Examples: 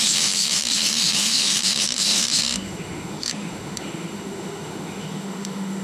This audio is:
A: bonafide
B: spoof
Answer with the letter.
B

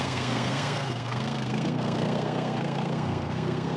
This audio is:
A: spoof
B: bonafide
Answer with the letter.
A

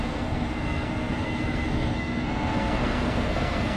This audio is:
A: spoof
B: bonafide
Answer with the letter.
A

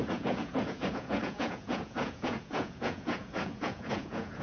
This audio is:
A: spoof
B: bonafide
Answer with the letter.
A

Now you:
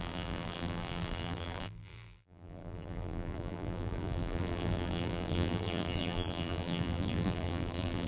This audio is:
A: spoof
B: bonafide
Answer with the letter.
A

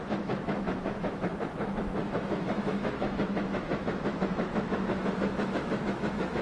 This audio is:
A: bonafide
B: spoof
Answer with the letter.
B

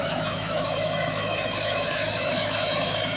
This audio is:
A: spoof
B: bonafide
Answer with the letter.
A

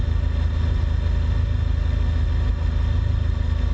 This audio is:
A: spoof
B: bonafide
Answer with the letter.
B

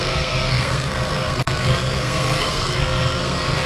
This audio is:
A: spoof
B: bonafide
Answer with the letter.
A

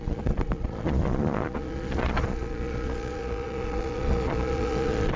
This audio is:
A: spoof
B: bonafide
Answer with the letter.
A